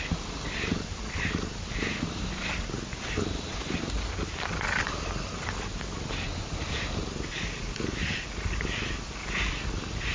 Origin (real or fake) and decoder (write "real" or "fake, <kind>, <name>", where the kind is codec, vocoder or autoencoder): real